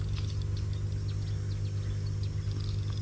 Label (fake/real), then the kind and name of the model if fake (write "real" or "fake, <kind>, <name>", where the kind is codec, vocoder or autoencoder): real